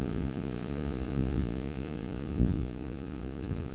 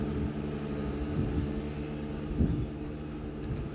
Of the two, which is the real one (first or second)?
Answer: second